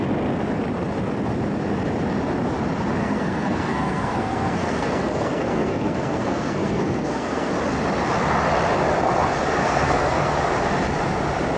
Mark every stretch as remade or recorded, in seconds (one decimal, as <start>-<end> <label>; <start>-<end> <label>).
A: 0.0-3.0 recorded; 3.0-7.5 remade; 7.5-9.6 recorded; 9.6-10.3 remade; 10.3-11.6 recorded